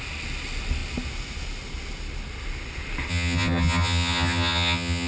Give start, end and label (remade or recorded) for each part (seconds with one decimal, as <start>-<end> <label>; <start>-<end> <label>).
0.0-3.1 recorded; 3.1-5.1 remade